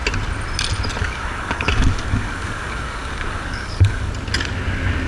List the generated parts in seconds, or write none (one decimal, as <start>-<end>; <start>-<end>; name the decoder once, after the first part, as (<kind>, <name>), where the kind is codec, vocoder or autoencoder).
1.0-4.1 (codec, DAC)